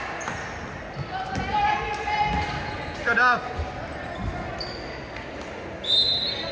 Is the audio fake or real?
real